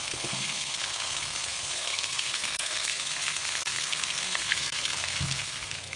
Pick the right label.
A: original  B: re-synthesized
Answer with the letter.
B